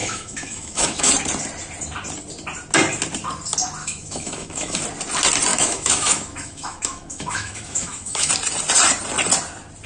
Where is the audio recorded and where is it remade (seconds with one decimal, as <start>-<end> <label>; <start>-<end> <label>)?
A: 0.0-1.1 remade; 1.1-3.8 recorded; 3.8-4.8 remade; 4.8-5.5 recorded; 5.5-8.3 remade; 8.3-9.9 recorded